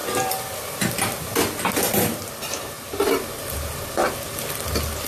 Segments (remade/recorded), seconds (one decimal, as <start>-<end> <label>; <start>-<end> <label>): 0.0-2.3 remade; 2.3-5.1 recorded